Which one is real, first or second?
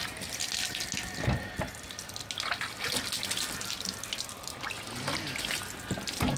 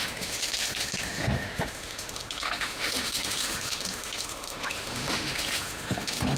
first